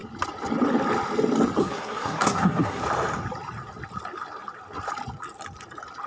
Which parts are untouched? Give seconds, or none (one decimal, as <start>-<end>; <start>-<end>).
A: 0.0-1.6; 2.8-6.1